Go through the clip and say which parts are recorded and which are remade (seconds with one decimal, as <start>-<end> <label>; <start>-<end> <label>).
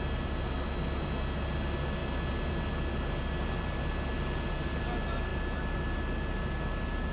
0.0-7.1 recorded